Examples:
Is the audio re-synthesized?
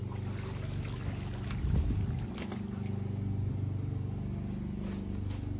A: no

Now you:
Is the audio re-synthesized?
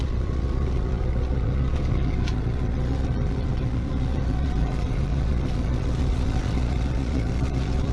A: yes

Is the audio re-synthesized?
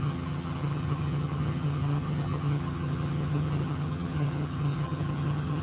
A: yes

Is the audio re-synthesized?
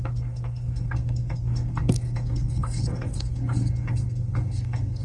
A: yes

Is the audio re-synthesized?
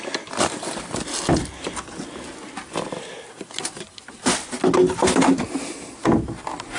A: no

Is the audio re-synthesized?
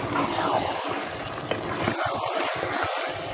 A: no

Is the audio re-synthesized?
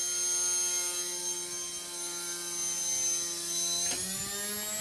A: no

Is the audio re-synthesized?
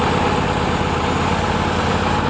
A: no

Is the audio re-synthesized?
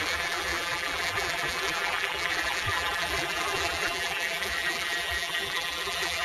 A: yes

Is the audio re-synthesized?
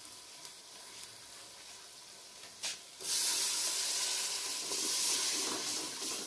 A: no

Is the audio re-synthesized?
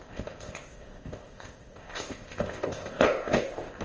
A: yes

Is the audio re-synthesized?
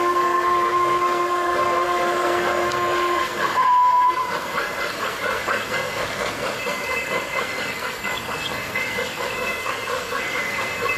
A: yes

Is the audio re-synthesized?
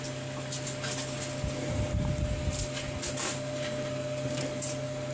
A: no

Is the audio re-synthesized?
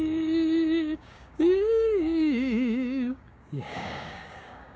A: yes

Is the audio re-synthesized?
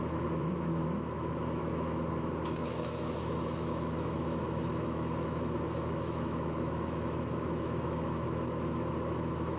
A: yes